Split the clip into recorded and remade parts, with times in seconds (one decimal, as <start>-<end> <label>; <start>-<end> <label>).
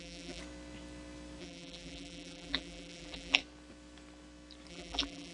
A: 0.0-0.4 remade; 0.4-1.4 recorded; 1.4-3.4 remade; 3.4-4.7 recorded; 4.7-5.3 remade